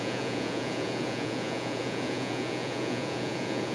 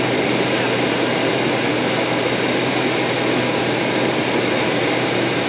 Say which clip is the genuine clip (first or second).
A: second